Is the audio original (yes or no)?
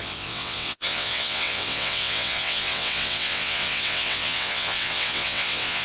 no